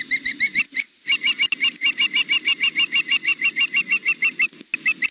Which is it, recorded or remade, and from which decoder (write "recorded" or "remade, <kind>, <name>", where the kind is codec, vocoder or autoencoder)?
recorded